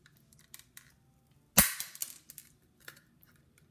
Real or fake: real